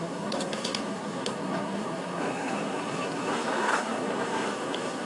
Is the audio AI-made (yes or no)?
yes